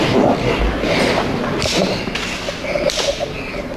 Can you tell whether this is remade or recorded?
recorded